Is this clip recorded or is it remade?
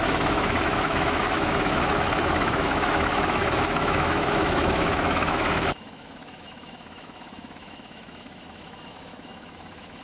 remade